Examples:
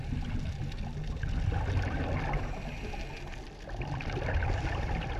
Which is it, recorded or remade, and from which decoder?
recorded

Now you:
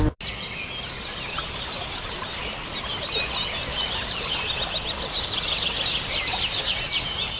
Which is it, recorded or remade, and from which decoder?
recorded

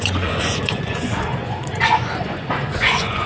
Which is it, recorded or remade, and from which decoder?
remade, vocoder, Vocos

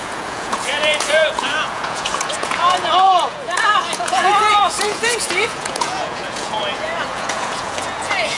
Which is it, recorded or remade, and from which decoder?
remade, vocoder, Vocos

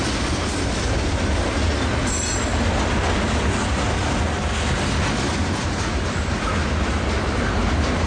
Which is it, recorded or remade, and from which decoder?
recorded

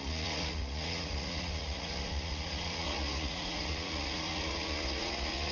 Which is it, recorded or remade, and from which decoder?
remade, vocoder, Vocos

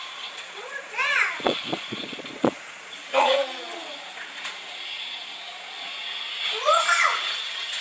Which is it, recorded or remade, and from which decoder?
remade, vocoder, Vocos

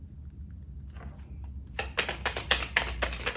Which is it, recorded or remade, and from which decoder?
recorded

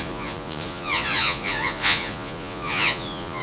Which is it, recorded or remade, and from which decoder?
remade, vocoder, Vocos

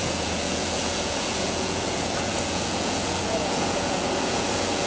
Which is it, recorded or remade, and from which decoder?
remade, vocoder, Vocos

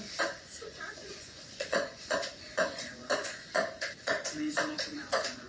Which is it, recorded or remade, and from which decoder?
remade, vocoder, Vocos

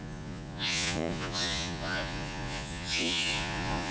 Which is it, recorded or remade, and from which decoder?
remade, vocoder, Vocos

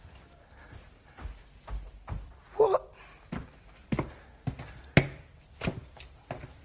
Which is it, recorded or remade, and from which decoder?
recorded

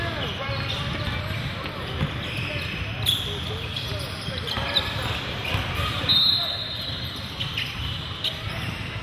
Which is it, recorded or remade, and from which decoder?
recorded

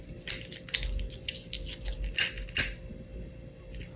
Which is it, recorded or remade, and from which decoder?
recorded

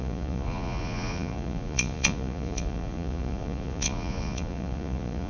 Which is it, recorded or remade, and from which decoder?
remade, vocoder, Vocos